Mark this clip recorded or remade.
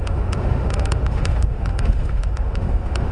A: remade